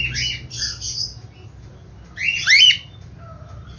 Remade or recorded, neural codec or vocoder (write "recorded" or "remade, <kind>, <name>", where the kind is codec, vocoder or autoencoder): recorded